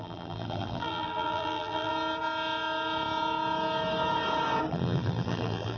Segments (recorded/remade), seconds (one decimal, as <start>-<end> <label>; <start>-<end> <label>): 0.0-1.9 remade; 1.9-4.7 recorded; 4.7-5.8 remade